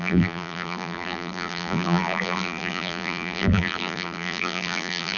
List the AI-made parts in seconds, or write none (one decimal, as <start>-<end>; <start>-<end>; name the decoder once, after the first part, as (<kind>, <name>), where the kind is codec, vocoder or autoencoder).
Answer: 0.0-5.2 (vocoder, BigVGAN v2)